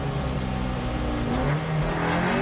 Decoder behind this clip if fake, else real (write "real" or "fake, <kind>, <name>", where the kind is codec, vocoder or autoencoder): real